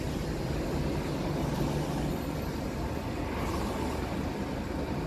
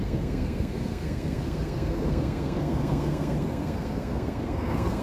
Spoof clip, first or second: second